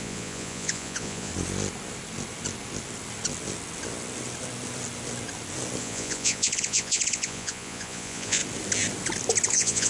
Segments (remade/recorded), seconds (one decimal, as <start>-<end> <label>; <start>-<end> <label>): 0.0-1.3 remade; 1.3-5.8 recorded; 5.8-8.4 remade; 8.4-9.5 recorded; 9.5-9.9 remade